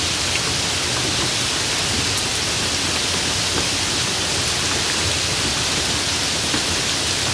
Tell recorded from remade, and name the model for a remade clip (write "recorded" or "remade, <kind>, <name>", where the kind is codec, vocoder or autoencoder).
recorded